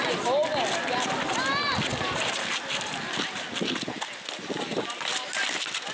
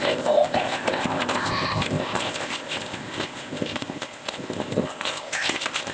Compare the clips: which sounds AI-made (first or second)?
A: second